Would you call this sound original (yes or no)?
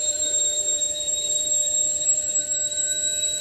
no